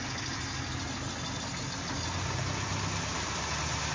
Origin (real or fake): real